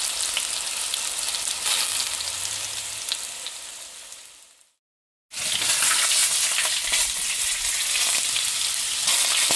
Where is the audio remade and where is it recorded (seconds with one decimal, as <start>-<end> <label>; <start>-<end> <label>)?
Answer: 0.0-6.2 recorded; 6.2-8.9 remade; 8.9-9.6 recorded